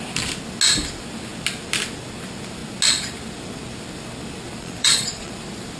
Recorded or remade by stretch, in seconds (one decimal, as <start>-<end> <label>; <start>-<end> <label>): 0.0-4.6 recorded; 4.6-5.3 remade; 5.3-5.8 recorded